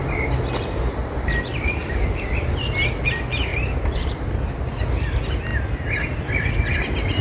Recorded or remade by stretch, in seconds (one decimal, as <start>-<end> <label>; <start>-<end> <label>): 0.0-1.0 recorded; 1.0-1.6 remade; 1.6-3.5 recorded; 3.5-4.3 remade; 4.3-7.2 recorded